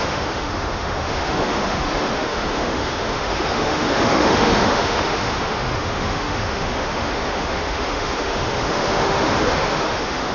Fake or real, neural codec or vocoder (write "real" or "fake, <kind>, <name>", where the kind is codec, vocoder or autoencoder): fake, autoencoder, DAC-VAE